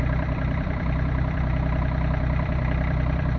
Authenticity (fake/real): fake